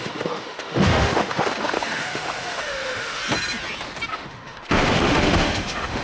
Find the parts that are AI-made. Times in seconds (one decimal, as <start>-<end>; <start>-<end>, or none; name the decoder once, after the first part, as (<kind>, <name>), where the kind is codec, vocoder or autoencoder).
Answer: 0.0-3.2 (autoencoder, DAC-VAE); 4.1-6.0